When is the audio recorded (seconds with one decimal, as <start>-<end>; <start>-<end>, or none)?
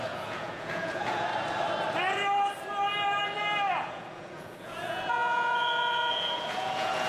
1.3-3.7